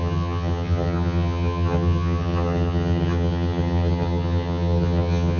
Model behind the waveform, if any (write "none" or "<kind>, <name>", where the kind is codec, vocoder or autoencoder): vocoder, HiFi-GAN